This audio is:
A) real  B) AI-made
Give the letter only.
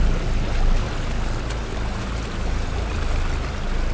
A